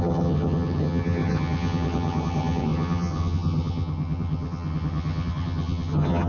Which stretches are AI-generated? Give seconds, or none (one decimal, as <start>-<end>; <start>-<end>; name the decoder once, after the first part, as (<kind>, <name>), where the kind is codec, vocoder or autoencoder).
0.0-6.3 (vocoder, HiFi-GAN)